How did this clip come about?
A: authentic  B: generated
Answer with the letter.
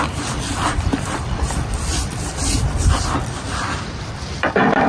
B